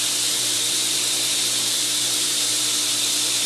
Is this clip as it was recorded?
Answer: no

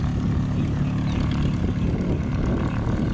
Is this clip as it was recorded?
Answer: yes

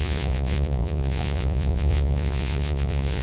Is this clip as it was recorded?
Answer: no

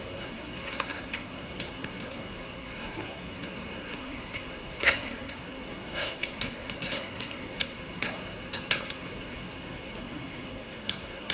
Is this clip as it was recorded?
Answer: no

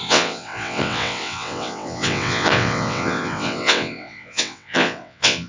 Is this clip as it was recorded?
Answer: no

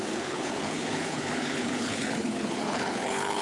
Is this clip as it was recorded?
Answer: no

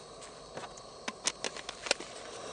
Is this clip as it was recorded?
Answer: yes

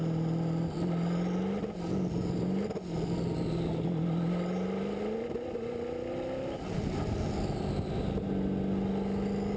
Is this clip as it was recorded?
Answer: yes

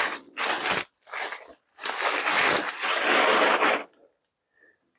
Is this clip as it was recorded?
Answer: yes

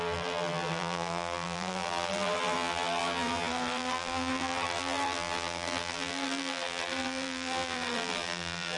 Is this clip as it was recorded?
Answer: no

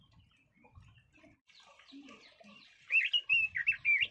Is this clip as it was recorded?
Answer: no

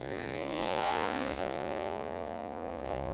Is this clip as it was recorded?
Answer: no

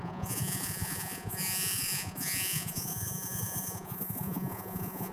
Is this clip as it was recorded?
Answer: no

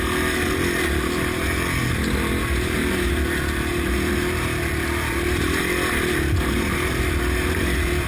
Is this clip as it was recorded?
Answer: yes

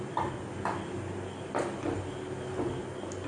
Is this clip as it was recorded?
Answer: yes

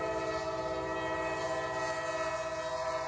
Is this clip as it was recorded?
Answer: yes